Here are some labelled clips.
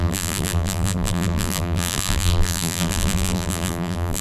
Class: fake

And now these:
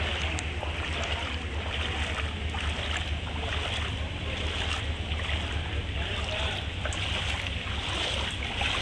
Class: real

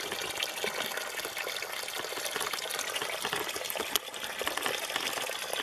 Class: real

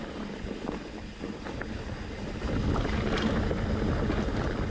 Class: real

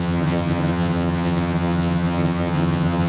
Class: fake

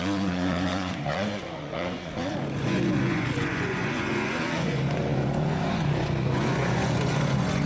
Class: fake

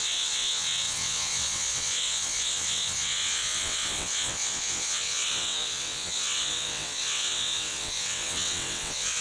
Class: fake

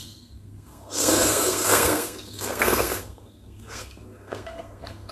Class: fake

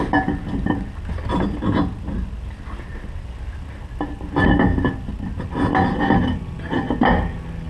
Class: real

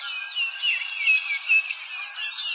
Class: real